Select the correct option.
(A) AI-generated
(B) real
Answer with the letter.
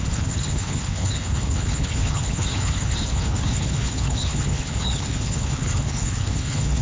A